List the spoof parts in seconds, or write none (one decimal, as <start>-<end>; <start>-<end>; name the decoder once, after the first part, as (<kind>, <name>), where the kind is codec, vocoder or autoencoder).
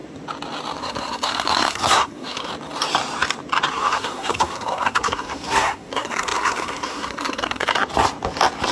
0.8-2.5 (codec, SNAC); 3.7-7.7